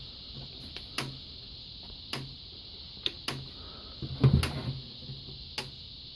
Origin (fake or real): real